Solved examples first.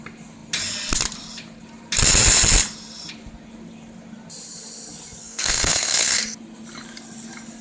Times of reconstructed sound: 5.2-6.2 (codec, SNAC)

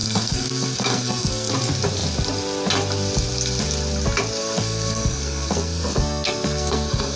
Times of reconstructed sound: 0.0-1.5 (codec, SNAC); 4.4-7.2

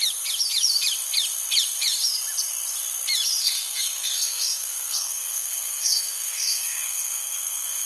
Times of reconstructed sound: 3.4-7.9 (codec, SNAC)

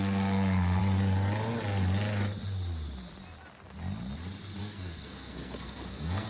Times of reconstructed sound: 0.0-0.8 (codec, SNAC); 4.6-6.3